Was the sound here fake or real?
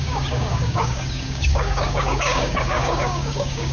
fake